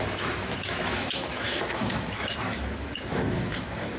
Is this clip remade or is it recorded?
remade